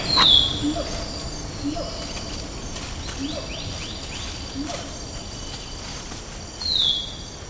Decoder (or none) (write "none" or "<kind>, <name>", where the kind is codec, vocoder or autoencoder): none